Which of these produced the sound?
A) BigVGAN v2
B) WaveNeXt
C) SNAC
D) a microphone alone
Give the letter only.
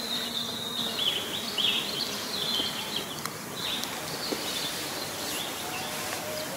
D